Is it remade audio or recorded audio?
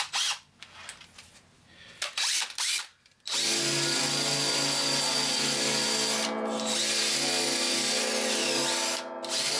recorded